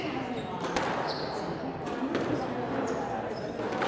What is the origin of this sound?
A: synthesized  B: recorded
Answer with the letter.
B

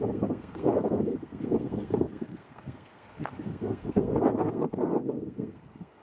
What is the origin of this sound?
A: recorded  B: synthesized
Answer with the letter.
B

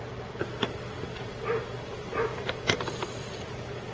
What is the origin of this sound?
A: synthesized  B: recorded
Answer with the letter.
B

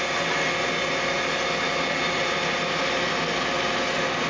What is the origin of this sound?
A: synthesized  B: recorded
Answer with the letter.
B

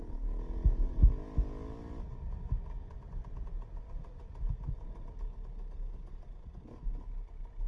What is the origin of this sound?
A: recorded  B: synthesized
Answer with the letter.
A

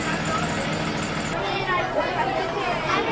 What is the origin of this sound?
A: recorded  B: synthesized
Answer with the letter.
A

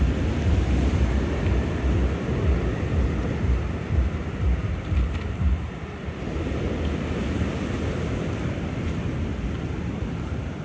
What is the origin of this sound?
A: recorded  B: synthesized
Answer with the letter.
A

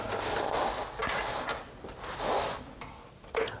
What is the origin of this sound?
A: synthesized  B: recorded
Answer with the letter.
B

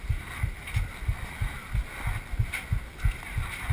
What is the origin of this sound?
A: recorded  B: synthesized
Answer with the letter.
A